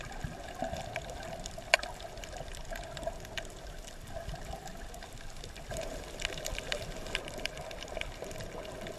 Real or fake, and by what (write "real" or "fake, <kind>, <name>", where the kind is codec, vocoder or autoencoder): real